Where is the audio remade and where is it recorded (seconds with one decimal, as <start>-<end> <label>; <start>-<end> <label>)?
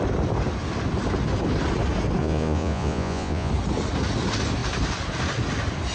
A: 0.0-2.2 recorded; 2.2-3.5 remade; 3.5-5.9 recorded